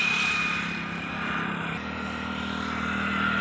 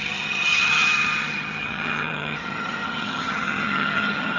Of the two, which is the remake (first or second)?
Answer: second